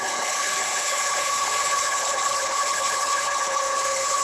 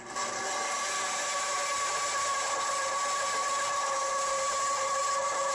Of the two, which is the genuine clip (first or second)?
second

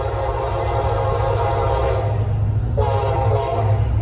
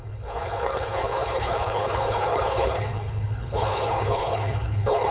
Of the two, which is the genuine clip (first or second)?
first